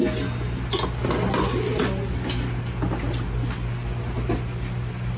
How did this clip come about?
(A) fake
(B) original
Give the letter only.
B